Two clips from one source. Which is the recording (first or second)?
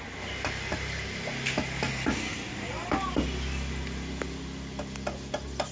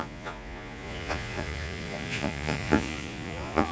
first